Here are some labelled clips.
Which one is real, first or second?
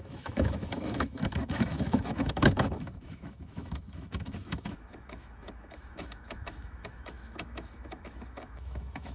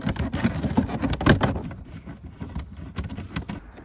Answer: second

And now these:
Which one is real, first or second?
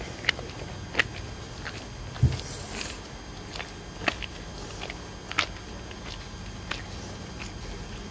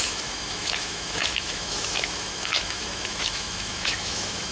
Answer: first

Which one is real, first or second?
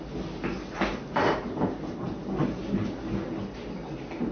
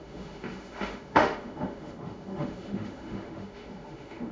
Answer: first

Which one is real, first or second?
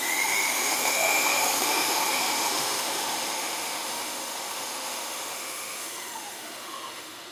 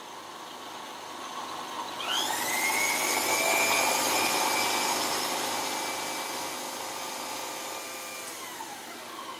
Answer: second